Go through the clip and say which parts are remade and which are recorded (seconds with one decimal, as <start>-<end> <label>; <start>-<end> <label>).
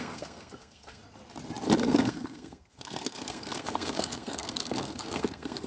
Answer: 0.0-1.0 remade; 1.0-1.8 recorded; 1.8-5.7 remade